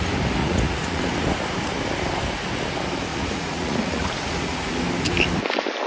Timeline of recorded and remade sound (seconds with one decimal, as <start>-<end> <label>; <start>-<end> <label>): 0.0-0.4 recorded; 0.4-1.0 remade; 1.0-3.1 recorded; 3.1-4.8 remade; 4.8-5.9 recorded